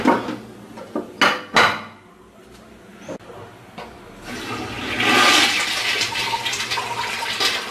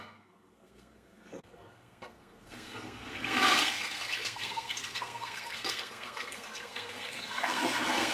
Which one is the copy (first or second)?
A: second